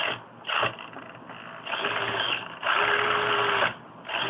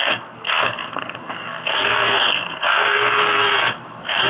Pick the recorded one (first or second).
first